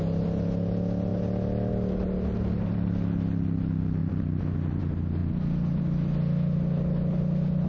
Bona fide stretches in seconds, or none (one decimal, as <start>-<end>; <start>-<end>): 0.0-7.7